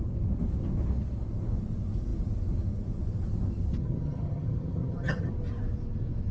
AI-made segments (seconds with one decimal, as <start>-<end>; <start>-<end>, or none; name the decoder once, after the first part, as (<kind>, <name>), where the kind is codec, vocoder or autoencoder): 3.8-5.3 (vocoder, HiFi-GAN)